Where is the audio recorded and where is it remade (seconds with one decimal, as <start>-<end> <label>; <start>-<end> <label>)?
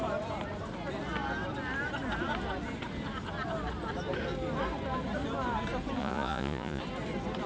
0.0-6.0 recorded; 6.0-6.8 remade; 6.8-7.5 recorded